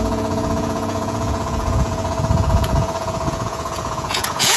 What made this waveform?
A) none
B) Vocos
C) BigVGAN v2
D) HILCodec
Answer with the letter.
B